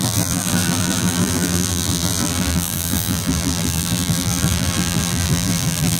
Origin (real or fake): fake